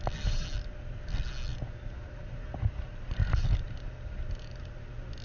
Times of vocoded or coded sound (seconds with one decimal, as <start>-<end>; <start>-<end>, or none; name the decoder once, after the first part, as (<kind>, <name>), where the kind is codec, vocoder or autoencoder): 1.5-4.6 (vocoder, BigVGAN v2)

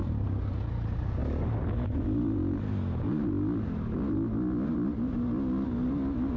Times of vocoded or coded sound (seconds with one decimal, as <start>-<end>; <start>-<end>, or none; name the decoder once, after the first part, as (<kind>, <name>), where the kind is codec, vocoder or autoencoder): none

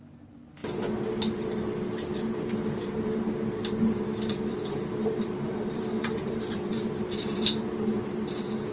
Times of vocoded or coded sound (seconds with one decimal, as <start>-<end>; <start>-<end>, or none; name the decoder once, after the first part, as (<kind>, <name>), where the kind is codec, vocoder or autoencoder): 4.5-7.4 (vocoder, BigVGAN v2)